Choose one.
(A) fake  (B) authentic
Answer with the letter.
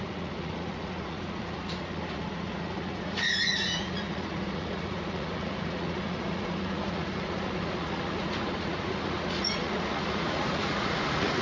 A